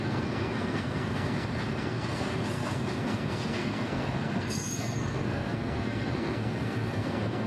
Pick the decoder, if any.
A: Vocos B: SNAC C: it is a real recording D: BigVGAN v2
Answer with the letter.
B